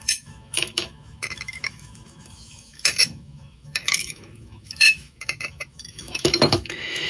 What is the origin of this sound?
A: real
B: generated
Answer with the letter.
B